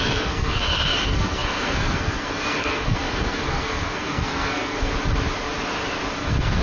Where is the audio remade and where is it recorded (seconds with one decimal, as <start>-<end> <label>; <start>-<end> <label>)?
0.0-4.9 remade; 4.9-6.1 recorded; 6.1-6.6 remade